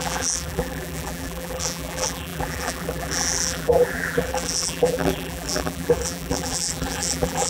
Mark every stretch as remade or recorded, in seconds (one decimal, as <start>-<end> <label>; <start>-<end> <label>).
0.0-7.5 remade